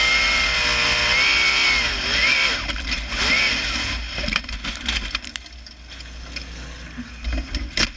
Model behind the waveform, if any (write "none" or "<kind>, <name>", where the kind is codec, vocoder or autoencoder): none